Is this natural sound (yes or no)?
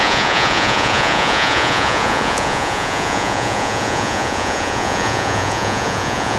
no